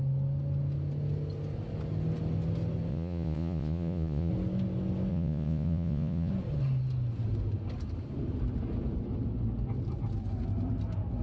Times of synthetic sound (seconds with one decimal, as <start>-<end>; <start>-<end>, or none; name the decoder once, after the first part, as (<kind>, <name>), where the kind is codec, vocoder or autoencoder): 2.9-4.3 (vocoder, Vocos); 5.1-6.3